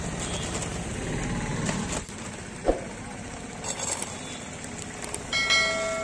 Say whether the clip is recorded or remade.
recorded